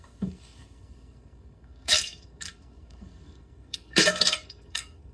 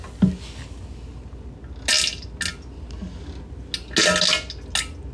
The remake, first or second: first